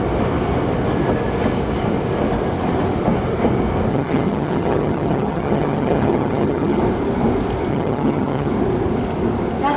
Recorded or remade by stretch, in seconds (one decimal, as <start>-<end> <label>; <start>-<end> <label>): 0.0-3.9 recorded; 3.9-6.8 remade; 6.8-7.7 recorded; 7.7-8.5 remade; 8.5-9.8 recorded